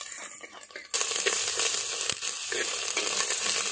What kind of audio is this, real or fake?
real